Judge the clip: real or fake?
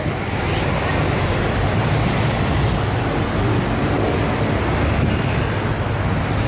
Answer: real